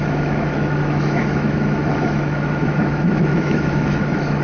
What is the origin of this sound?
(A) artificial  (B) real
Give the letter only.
A